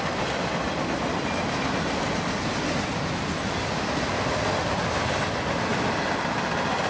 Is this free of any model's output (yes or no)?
yes